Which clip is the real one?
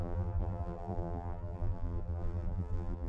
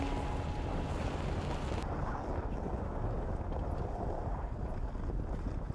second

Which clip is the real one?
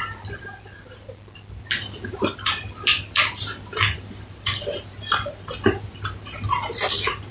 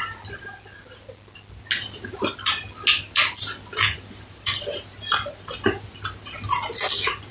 second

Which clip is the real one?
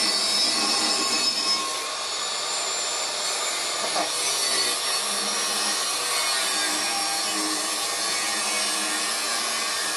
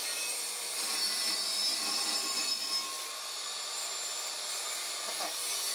first